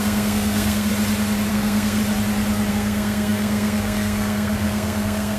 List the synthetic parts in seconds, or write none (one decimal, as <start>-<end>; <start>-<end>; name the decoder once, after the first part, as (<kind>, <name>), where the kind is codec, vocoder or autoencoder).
0.0-0.9 (codec, SNAC); 1.5-2.0; 2.7-5.4